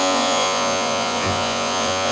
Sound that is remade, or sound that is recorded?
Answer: remade